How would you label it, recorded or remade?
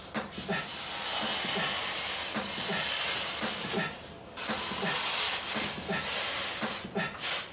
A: recorded